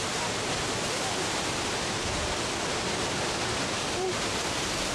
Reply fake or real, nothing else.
real